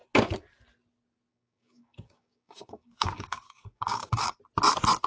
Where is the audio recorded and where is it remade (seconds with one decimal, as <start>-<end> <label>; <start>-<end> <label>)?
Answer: 0.0-1.3 recorded; 1.3-4.4 remade; 4.4-5.1 recorded